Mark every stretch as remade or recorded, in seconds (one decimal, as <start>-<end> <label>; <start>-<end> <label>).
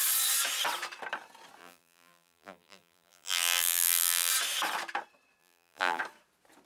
0.0-1.6 recorded; 1.6-4.3 remade; 4.3-5.4 recorded; 5.4-6.0 remade; 6.0-6.6 recorded